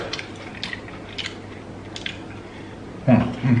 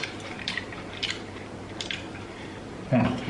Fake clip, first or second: second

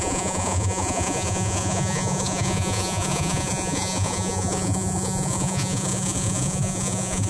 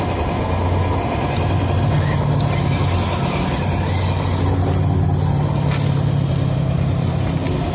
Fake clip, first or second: first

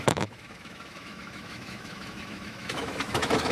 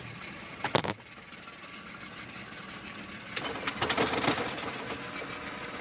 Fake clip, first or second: first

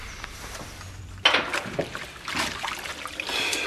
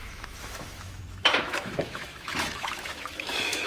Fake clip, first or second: second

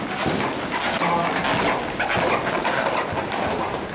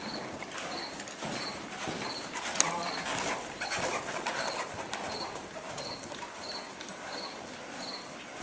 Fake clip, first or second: second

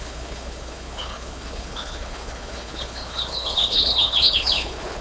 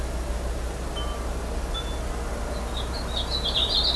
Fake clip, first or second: first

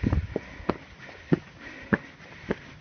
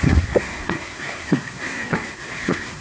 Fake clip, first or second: second